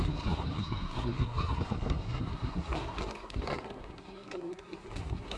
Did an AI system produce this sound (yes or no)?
yes